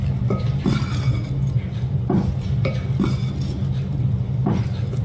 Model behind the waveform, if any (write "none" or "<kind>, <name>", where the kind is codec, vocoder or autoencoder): none